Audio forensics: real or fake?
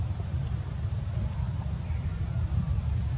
real